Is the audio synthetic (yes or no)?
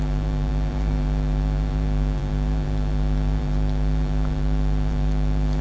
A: yes